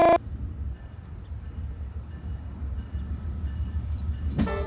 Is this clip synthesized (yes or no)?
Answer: no